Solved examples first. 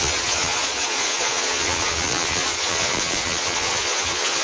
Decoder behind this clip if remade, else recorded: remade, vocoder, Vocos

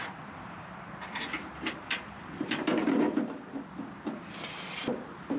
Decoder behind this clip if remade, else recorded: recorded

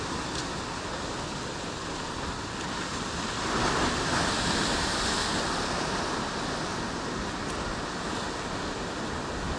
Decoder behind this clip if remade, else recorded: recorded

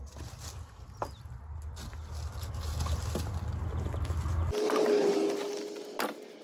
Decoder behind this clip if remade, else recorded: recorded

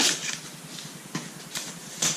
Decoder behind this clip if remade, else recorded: recorded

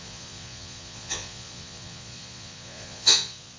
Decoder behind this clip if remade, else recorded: remade, vocoder, Vocos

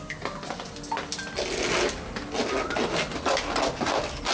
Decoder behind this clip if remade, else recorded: recorded